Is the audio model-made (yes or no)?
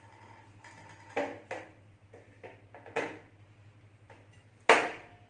no